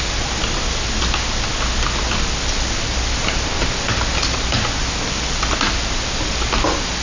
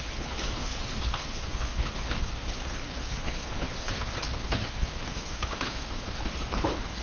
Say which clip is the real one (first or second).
first